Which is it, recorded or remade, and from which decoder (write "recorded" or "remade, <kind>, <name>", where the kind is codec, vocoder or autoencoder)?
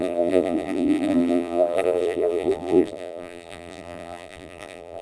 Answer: remade, vocoder, BigVGAN v2